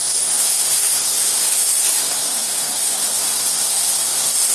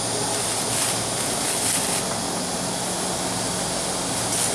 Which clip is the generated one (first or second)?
first